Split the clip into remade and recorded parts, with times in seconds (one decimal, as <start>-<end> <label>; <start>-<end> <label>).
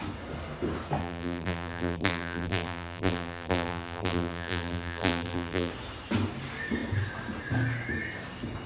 0.0-1.0 recorded; 1.0-5.7 remade; 5.7-8.7 recorded